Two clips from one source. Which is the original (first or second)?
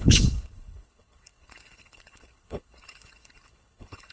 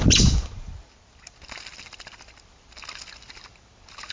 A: second